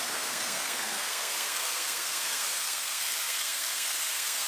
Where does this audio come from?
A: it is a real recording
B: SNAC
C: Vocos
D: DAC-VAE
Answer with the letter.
B